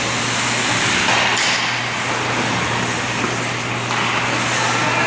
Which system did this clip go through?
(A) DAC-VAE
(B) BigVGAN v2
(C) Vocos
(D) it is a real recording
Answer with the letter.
D